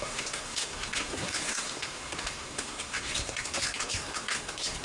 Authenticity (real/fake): fake